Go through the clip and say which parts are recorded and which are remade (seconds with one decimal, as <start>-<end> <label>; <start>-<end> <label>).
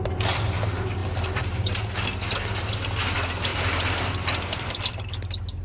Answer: 0.0-1.0 recorded; 1.0-1.9 remade; 1.9-3.5 recorded; 3.5-4.9 remade; 4.9-5.6 recorded